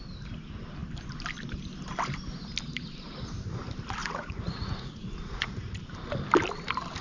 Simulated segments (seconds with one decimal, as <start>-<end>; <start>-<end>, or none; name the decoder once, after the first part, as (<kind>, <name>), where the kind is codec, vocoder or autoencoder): 4.0-5.8 (vocoder, Vocos)